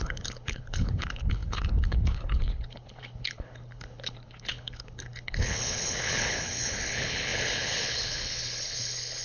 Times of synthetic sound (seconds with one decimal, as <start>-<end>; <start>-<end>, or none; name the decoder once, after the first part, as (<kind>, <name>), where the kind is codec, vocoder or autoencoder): 0.0-9.2 (codec, HILCodec)